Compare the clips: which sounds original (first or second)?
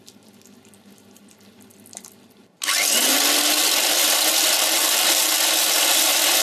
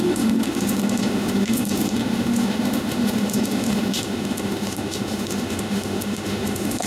first